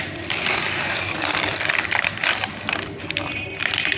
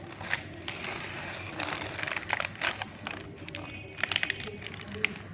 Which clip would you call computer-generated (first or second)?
first